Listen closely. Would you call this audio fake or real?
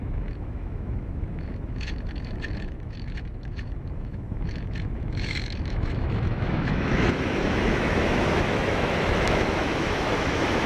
fake